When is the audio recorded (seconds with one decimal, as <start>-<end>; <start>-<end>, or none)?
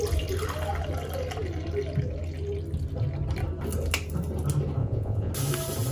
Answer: 0.0-4.8; 5.3-5.9